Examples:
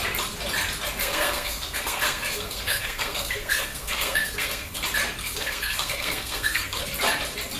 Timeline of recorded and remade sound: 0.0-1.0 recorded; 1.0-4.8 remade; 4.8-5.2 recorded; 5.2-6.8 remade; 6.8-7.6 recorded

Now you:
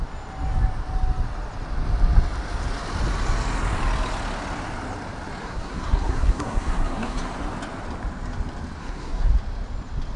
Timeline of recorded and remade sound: 0.0-5.4 recorded; 5.4-7.3 remade; 7.3-8.8 recorded; 8.8-9.3 remade; 9.3-10.2 recorded

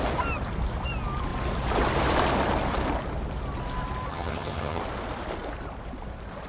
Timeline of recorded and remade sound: 0.0-4.1 recorded; 4.1-4.8 remade; 4.8-6.5 recorded

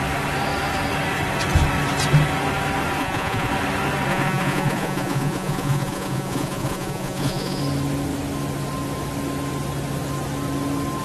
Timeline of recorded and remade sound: 0.0-3.0 recorded; 3.0-3.5 remade; 3.5-4.1 recorded; 4.1-7.6 remade; 7.6-11.0 recorded

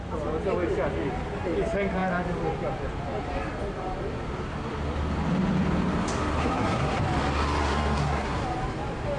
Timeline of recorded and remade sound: 0.0-6.4 recorded; 6.4-7.0 remade; 7.0-7.6 recorded; 7.6-8.4 remade; 8.4-9.2 recorded